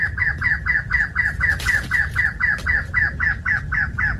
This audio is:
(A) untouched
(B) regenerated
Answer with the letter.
A